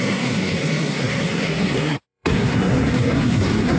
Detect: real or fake fake